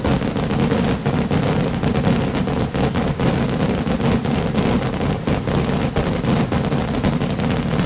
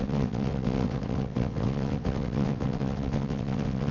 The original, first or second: first